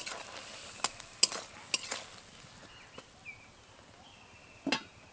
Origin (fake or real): real